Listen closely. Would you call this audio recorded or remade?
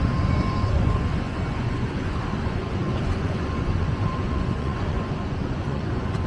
remade